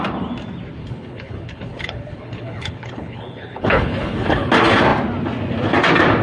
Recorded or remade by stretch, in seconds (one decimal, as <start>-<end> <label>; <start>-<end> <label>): 0.0-0.8 recorded; 0.8-4.5 remade; 4.5-6.2 recorded